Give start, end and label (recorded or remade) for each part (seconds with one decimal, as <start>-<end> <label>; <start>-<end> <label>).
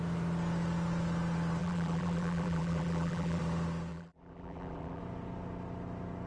0.0-1.6 recorded; 1.6-3.4 remade; 3.4-3.9 recorded; 3.9-5.0 remade; 5.0-6.3 recorded